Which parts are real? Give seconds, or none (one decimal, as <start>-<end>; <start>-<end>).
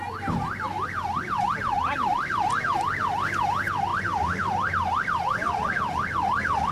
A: 0.0-6.7